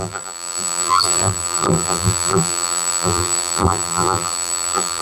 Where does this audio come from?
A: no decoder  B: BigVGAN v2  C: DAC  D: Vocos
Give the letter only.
B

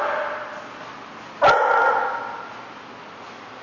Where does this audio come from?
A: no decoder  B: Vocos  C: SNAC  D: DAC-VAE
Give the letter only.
A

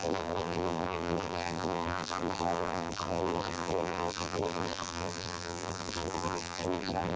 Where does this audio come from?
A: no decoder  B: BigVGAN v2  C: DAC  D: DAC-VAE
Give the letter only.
B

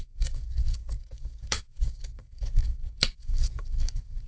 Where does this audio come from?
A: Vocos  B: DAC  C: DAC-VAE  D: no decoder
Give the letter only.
B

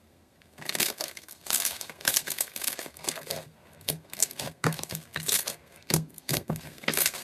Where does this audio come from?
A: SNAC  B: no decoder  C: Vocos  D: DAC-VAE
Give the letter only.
A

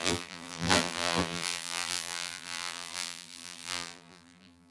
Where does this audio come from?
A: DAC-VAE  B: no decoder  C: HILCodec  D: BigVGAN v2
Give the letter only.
D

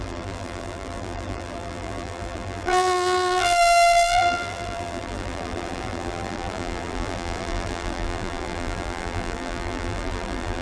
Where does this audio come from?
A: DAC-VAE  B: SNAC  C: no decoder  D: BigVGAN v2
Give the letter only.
D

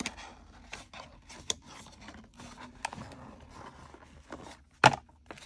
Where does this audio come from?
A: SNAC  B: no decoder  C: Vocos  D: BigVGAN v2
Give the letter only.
B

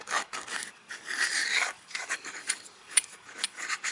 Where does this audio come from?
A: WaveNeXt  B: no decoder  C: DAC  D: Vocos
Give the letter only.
C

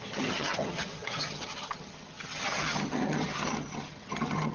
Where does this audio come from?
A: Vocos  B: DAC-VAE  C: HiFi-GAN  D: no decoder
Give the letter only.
C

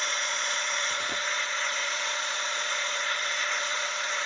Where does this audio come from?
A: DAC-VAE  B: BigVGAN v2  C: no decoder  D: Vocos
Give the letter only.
D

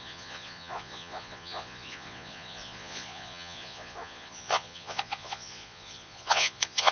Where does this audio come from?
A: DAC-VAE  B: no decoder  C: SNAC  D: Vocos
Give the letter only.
D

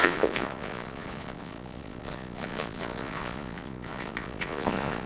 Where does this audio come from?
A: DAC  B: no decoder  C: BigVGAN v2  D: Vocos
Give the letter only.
D